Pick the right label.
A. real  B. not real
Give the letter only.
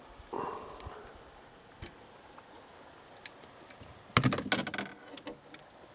A